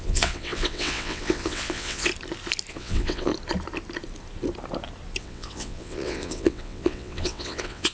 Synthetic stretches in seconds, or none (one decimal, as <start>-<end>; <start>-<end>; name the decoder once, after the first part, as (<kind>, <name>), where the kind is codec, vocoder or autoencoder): 0.0-2.1 (vocoder, WaveNeXt); 2.7-3.3; 5.2-7.9